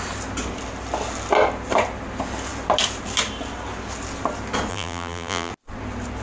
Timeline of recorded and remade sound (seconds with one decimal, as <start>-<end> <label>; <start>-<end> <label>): 0.0-4.7 recorded; 4.7-5.5 remade; 5.5-6.2 recorded